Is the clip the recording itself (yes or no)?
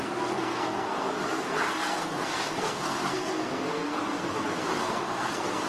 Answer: no